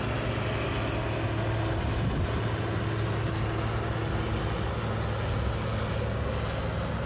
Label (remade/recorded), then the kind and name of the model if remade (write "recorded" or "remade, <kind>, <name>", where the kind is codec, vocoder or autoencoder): recorded